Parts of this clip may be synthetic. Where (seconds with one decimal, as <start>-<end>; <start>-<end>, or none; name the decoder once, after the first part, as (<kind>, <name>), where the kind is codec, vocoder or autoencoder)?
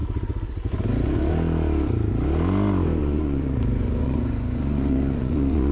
3.0-5.7 (vocoder, Vocos)